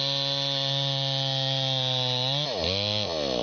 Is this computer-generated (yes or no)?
no